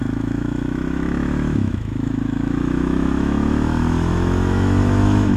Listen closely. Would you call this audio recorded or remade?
remade